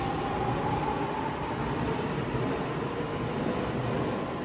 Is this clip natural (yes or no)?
yes